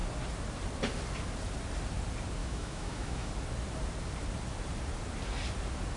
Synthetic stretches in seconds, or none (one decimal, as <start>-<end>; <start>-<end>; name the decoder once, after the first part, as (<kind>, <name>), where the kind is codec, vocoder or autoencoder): 2.4-3.3 (autoencoder, DAC-VAE)